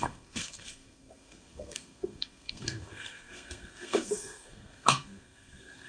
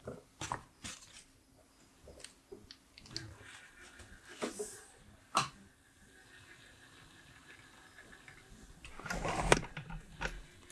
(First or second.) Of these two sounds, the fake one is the first